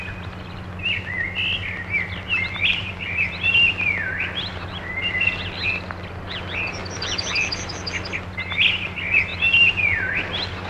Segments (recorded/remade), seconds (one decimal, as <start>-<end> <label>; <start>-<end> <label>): 0.0-2.7 recorded; 2.7-3.5 remade; 3.5-6.8 recorded; 6.8-7.5 remade; 7.5-9.3 recorded; 9.3-9.8 remade; 9.8-10.7 recorded